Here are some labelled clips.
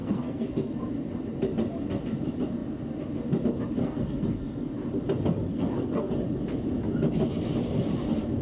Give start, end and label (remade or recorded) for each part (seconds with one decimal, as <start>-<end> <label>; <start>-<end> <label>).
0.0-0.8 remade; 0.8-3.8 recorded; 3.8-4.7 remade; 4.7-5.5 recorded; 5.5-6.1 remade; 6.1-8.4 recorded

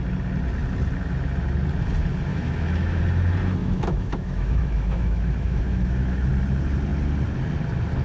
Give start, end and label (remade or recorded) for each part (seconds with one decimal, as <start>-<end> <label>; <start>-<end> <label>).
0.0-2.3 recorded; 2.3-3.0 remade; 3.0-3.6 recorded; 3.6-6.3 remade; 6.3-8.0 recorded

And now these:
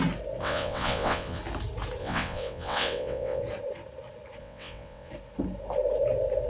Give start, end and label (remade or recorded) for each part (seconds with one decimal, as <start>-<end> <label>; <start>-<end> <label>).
0.0-0.4 recorded; 0.4-1.4 remade; 1.4-2.0 recorded; 2.0-3.4 remade; 3.4-4.4 recorded; 4.4-5.1 remade; 5.1-6.5 recorded